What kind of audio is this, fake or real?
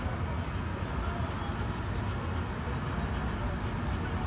real